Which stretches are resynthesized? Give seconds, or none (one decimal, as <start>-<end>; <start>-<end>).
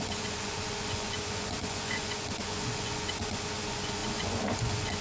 0.0-5.0